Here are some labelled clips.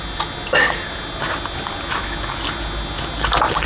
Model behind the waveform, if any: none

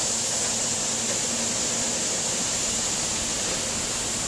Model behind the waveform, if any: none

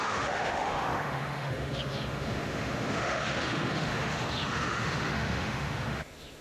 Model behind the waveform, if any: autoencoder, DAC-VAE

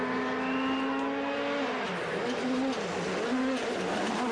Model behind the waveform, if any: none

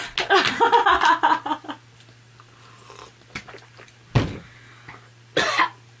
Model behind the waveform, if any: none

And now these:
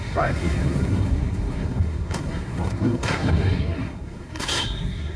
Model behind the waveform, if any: codec, SNAC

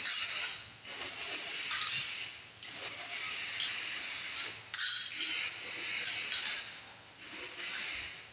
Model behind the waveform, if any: none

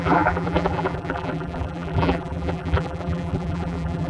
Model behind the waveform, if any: vocoder, BigVGAN v2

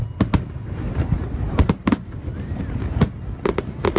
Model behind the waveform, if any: none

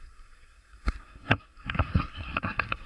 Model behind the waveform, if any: codec, SNAC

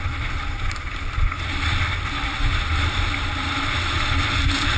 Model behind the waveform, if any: none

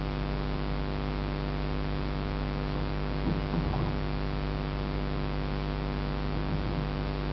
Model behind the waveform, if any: none